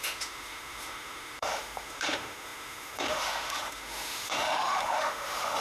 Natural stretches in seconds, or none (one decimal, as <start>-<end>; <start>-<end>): none